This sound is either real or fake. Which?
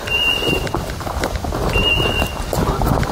real